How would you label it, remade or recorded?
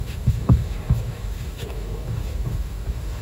remade